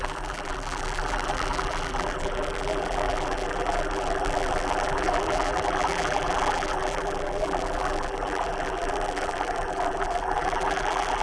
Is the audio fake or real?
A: fake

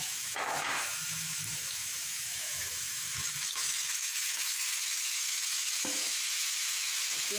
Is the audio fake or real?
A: fake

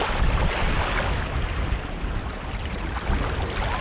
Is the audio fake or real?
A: real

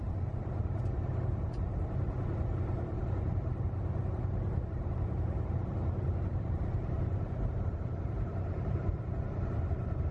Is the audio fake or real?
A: fake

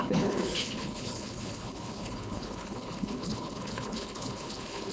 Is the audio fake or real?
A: fake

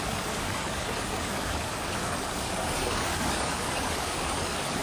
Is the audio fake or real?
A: fake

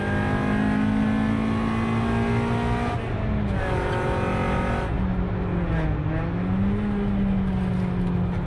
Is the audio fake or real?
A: real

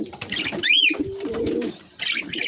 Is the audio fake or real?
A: fake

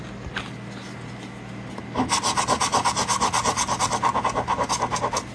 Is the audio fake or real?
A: real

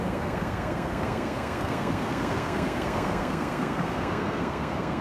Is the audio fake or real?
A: fake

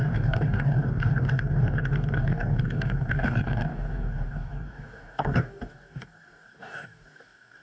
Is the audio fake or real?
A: fake